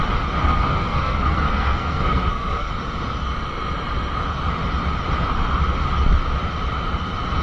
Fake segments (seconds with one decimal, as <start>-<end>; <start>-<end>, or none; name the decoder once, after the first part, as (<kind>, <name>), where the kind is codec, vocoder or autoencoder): 0.4-2.7 (codec, SNAC)